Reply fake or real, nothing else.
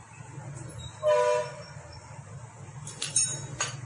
real